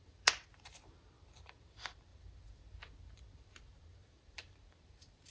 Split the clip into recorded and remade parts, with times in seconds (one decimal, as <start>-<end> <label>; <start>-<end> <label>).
0.0-5.3 remade